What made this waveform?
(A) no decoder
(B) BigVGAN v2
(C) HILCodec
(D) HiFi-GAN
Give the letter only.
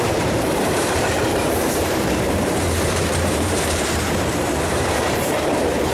B